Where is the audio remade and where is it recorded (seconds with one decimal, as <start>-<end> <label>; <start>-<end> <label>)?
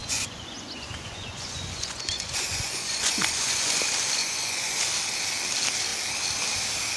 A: 0.0-3.8 remade; 3.8-4.2 recorded; 4.2-4.8 remade; 4.8-7.0 recorded